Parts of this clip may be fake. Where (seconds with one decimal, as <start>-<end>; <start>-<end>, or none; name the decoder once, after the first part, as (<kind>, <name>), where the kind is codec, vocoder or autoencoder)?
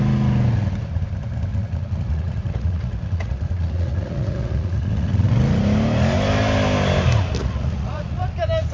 1.5-5.3 (vocoder, Vocos); 7.4-8.2